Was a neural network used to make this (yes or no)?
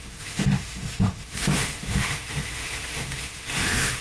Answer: yes